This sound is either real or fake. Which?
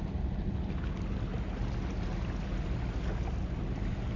real